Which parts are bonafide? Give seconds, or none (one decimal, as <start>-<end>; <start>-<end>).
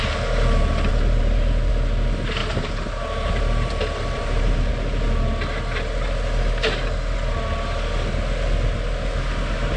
0.0-0.9; 1.7-2.4; 4.7-9.8